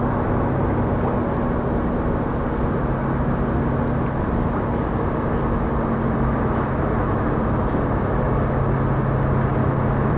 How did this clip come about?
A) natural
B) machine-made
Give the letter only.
A